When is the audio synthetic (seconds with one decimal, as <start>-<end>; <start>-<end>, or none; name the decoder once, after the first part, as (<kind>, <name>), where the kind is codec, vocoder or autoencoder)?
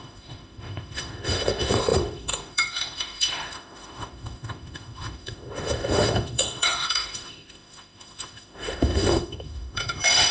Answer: 0.0-10.3 (autoencoder, DAC-VAE)